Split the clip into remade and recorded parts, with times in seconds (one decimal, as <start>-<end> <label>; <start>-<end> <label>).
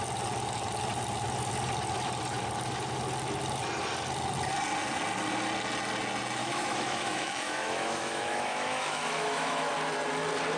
0.0-6.4 recorded; 6.4-9.7 remade; 9.7-10.6 recorded